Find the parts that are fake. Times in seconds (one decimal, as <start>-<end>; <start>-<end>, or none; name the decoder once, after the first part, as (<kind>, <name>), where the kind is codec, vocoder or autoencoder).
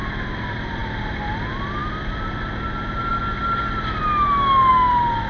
none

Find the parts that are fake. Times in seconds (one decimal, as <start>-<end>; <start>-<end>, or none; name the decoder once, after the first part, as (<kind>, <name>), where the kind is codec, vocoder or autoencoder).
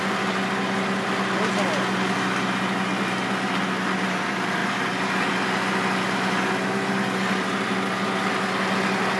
none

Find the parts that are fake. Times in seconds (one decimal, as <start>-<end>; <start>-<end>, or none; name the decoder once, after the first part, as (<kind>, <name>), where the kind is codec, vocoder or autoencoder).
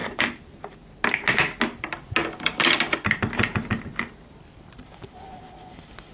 0.0-0.6 (vocoder, BigVGAN v2); 2.2-6.1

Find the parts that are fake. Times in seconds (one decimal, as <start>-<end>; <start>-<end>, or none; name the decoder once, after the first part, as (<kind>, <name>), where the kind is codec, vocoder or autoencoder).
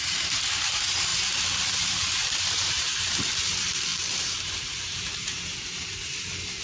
0.0-1.1 (vocoder, BigVGAN v2); 1.8-6.6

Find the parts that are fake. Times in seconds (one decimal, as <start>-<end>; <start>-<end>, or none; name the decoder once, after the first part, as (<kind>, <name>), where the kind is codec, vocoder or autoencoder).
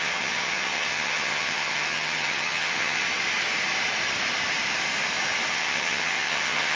0.0-3.0 (vocoder, HiFi-GAN); 5.5-6.8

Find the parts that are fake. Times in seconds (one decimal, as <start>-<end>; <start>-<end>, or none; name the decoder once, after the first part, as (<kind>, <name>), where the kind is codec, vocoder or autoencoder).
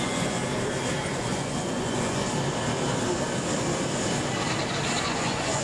0.0-0.4 (vocoder, Vocos); 1.1-2.2; 5.0-5.6